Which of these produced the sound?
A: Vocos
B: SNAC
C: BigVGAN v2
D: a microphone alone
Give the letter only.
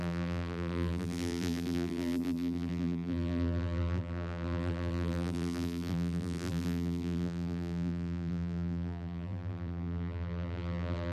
C